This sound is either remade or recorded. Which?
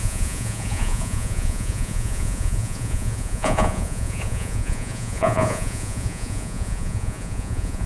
remade